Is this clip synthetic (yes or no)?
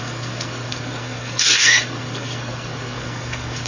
yes